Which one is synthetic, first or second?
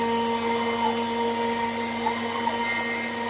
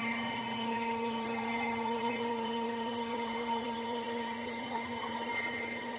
second